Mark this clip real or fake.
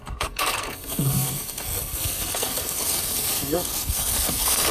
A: fake